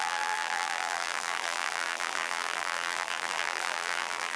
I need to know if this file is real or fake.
fake